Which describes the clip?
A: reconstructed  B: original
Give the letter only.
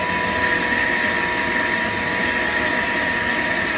B